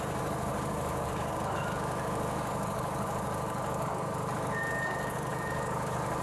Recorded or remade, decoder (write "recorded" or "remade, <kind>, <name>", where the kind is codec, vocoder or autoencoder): remade, codec, DAC